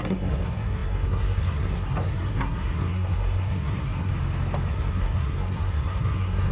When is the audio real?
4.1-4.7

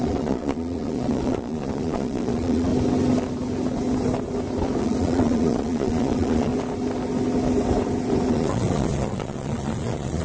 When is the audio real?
2.7-4.8; 6.5-8.3

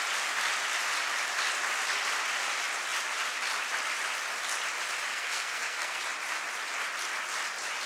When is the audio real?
0.0-5.1; 6.0-7.9

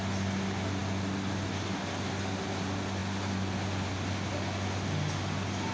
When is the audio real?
0.0-5.7

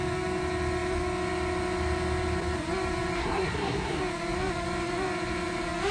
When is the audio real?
0.0-3.2; 4.0-5.9

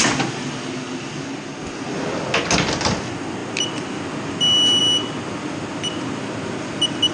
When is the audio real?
0.0-7.1

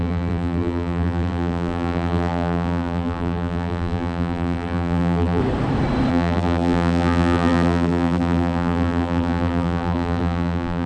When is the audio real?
5.4-6.1